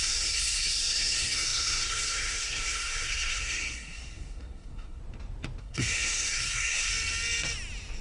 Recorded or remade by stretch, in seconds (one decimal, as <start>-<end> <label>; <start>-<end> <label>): 0.0-5.0 remade; 5.0-5.6 recorded; 5.6-6.9 remade; 6.9-8.0 recorded